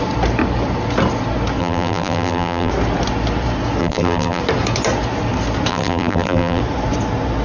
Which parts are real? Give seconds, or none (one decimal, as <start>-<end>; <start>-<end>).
0.0-1.6; 2.7-3.8; 4.4-5.7; 6.6-7.4